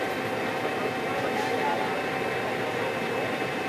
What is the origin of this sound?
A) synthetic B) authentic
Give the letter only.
B